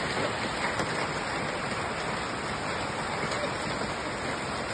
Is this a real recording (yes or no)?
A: yes